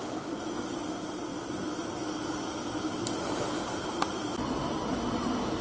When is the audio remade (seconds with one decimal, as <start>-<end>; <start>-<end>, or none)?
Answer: none